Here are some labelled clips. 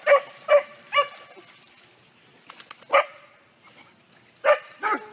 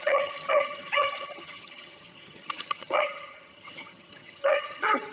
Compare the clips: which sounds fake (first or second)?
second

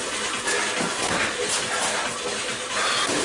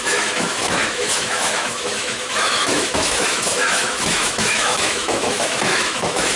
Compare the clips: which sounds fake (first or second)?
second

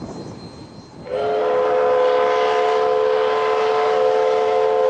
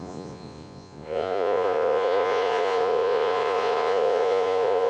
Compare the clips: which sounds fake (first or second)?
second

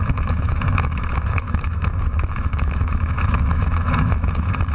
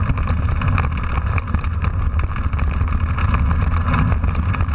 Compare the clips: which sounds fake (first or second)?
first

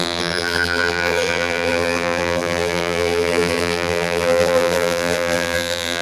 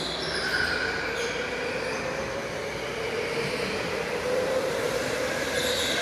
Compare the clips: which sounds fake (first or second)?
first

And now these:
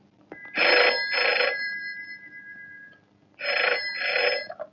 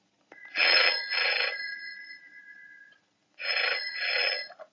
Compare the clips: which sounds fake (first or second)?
second